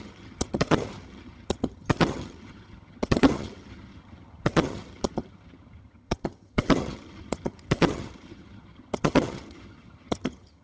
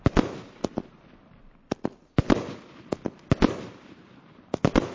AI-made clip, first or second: first